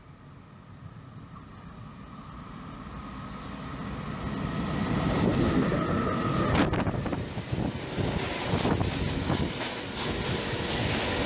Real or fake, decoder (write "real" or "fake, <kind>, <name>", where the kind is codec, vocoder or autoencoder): real